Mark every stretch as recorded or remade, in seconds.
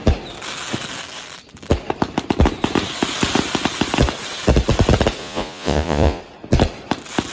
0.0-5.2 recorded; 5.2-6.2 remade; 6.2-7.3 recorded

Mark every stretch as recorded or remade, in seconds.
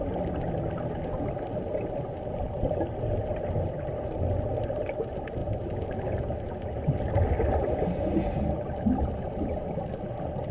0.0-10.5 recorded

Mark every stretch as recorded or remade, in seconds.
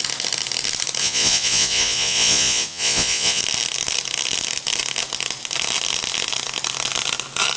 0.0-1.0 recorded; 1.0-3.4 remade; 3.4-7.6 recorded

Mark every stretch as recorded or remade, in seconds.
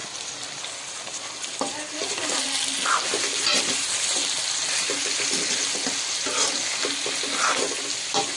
0.0-8.4 recorded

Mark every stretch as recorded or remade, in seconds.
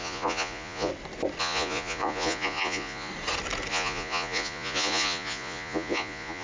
0.0-0.9 remade; 0.9-1.4 recorded; 1.4-3.1 remade; 3.1-3.7 recorded; 3.7-6.4 remade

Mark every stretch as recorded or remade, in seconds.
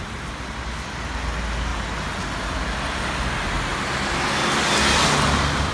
0.0-5.7 recorded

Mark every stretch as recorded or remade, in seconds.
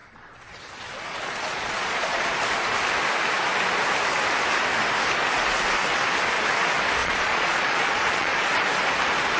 0.0-2.3 remade; 2.3-7.0 recorded; 7.0-8.5 remade; 8.5-9.4 recorded